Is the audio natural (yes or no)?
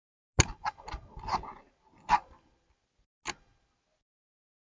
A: yes